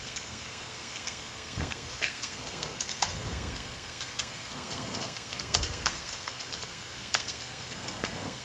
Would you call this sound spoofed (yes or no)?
yes